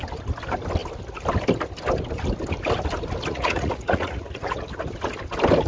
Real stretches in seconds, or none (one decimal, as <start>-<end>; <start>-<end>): 0.0-3.3; 4.6-5.7